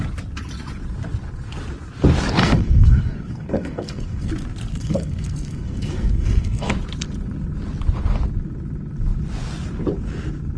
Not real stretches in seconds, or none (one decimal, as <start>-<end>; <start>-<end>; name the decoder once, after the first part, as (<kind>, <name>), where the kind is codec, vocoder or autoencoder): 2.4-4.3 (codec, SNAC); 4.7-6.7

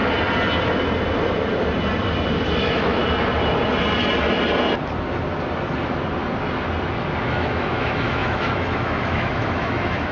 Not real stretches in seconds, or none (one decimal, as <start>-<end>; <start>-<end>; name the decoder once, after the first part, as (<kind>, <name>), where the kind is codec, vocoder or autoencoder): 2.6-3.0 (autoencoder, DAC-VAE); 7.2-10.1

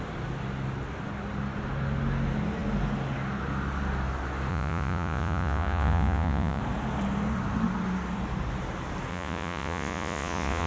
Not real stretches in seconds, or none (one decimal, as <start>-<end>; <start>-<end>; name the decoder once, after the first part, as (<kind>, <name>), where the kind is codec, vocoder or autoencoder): 4.5-6.6 (vocoder, Vocos); 9.1-10.7